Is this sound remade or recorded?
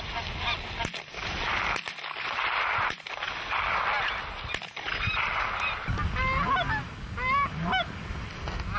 recorded